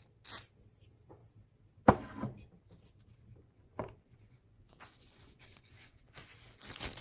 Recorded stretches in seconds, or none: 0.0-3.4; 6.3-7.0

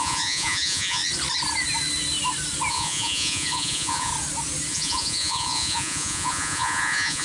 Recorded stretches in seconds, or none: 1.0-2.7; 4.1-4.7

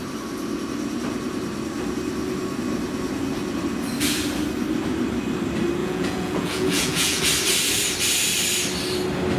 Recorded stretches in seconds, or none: 0.0-5.8; 7.2-9.4

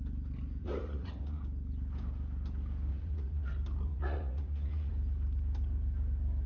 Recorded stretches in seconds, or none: 0.0-0.6; 1.4-2.9; 3.5-3.9; 4.9-6.5